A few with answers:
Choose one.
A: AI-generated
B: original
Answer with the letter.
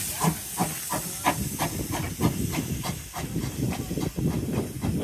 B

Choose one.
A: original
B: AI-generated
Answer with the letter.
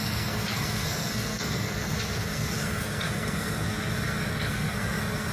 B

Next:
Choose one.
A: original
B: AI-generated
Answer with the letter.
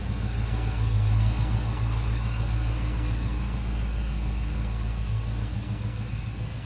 B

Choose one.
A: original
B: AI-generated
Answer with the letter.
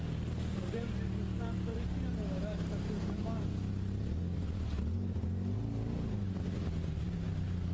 A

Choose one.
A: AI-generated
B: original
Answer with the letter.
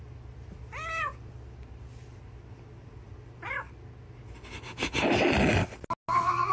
B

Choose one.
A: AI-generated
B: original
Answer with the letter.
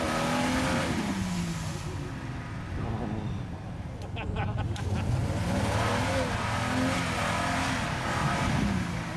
B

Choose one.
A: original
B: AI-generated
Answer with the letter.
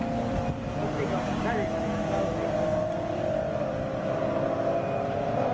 A